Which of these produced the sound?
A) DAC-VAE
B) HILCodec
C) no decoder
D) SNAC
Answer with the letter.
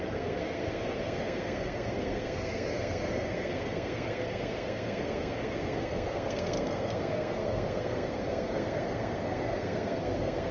D